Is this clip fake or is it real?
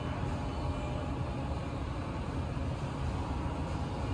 real